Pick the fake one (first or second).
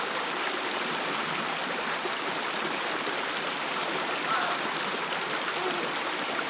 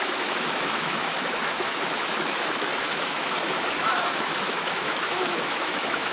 second